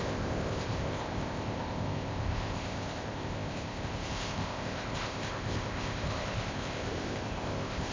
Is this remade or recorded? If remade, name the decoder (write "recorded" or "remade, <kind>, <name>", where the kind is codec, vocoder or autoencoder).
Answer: remade, codec, ZipCodec